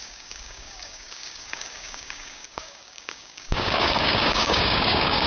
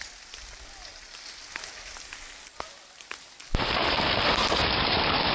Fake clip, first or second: first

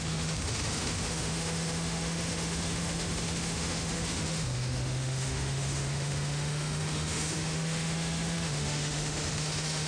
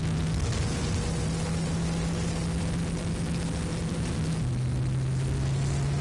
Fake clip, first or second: first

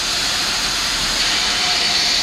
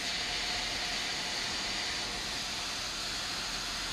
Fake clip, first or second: first